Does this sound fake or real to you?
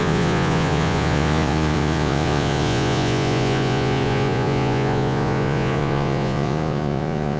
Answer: fake